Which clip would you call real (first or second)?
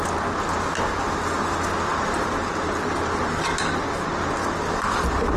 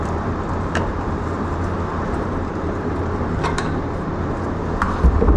first